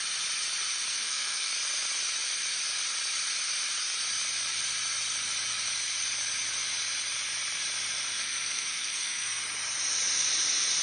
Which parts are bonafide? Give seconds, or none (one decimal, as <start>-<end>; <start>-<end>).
0.0-0.9; 1.5-8.2; 9.4-10.8